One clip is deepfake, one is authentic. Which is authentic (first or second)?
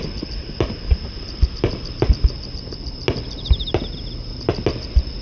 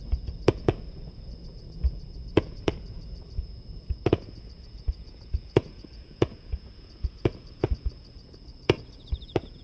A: first